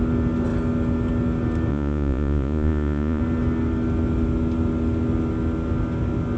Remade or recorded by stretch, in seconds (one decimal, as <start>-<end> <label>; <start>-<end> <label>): 0.0-1.7 recorded; 1.7-3.2 remade; 3.2-6.4 recorded